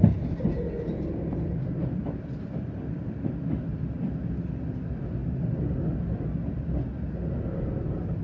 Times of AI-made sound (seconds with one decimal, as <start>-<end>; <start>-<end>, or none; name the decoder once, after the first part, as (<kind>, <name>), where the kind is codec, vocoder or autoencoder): 1.8-3.3 (vocoder, BigVGAN v2); 3.7-4.3

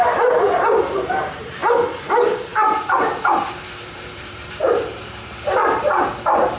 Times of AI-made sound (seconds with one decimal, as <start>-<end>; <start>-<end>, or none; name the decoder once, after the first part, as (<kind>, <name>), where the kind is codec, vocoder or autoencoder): 0.0-6.6 (vocoder, BigVGAN v2)

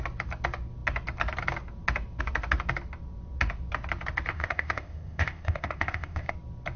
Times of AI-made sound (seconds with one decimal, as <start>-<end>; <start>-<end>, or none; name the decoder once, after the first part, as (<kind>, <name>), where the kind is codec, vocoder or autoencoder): 4.3-6.3 (codec, ZipCodec)

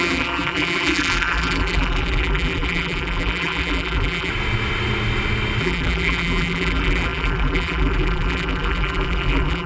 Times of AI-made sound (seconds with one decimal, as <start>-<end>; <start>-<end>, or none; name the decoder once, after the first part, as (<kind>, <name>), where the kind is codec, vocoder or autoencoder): 0.0-4.3 (vocoder, BigVGAN v2); 5.6-9.7

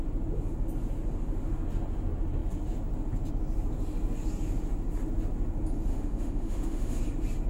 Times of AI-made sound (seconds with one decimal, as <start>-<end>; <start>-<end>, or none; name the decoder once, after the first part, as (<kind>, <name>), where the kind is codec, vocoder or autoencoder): 5.9-7.0 (autoencoder, DAC-VAE)

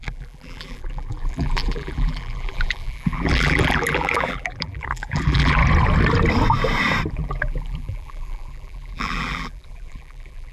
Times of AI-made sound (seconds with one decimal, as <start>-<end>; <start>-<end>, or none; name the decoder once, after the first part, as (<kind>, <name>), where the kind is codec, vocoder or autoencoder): 0.0-5.6 (vocoder, BigVGAN v2); 7.1-10.5